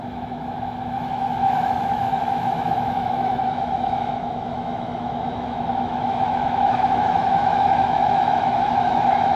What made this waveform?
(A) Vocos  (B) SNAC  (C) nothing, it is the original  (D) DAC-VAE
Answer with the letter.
D